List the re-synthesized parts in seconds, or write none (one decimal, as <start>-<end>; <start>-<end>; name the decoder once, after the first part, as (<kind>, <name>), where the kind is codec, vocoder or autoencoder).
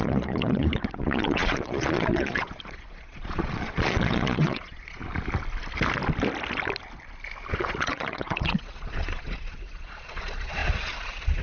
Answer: 0.0-5.0 (vocoder, Vocos); 7.5-11.4